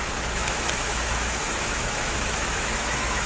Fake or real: fake